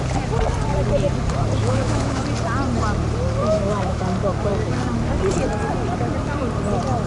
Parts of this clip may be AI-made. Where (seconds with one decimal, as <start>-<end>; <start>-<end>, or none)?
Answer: 1.6-2.2; 3.4-4.0